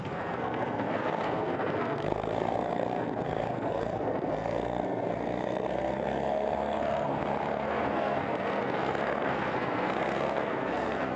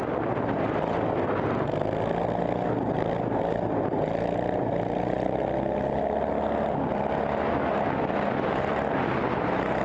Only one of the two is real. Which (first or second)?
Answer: second